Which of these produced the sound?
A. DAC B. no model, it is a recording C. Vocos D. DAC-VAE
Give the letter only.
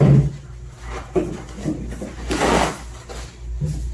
B